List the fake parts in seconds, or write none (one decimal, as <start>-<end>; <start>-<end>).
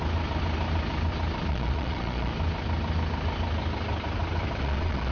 1.5-2.3; 4.6-5.1